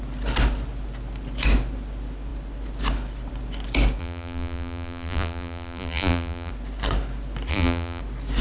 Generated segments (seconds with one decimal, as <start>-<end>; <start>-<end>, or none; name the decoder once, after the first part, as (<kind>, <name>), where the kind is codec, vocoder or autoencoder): 4.0-6.5 (vocoder, BigVGAN v2); 7.5-8.0